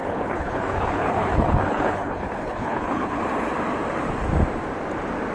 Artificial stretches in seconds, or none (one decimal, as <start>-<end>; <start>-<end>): 0.0-3.2